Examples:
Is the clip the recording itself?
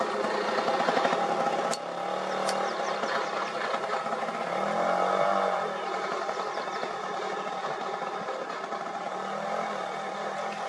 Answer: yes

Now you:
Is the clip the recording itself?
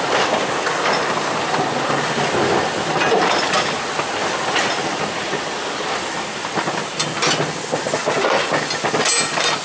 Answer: yes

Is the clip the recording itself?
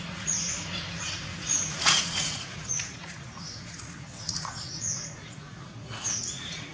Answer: no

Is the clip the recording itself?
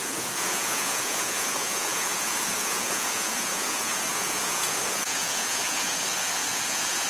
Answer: no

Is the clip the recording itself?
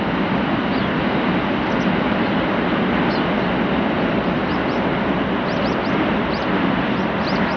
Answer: yes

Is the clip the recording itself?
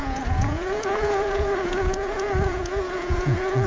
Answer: no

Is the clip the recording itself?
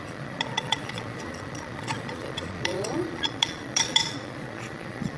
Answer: no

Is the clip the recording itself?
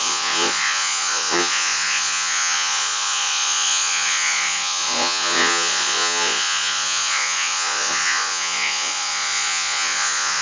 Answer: no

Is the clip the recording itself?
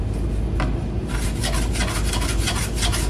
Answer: yes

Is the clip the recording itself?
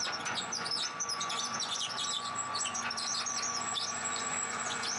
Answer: no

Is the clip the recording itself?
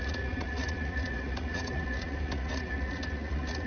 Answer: no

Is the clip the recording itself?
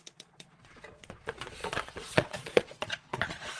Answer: no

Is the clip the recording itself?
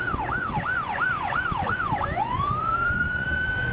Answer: no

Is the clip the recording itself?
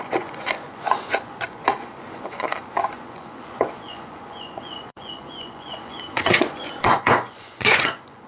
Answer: no